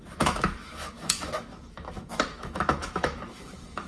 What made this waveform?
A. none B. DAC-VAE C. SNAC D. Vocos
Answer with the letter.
B